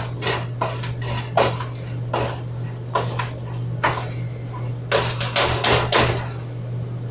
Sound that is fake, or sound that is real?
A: real